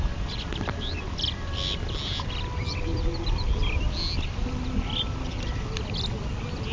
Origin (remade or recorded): recorded